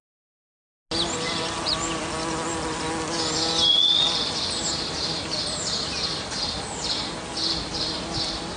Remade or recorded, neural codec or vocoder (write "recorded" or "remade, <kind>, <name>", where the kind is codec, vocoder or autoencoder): recorded